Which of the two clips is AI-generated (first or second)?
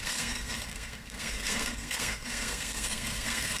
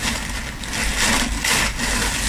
first